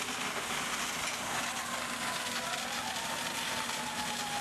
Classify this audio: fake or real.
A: real